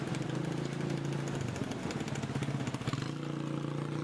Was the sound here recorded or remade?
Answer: recorded